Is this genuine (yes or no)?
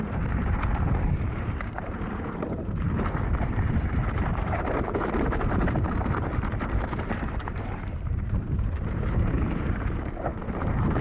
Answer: no